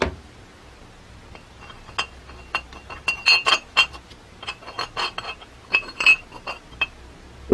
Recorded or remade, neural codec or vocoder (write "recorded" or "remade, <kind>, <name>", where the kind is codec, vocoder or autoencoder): recorded